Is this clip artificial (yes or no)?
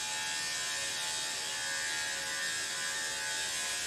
no